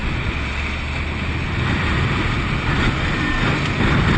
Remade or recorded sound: recorded